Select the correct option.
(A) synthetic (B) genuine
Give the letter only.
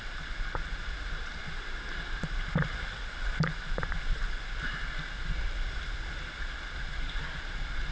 B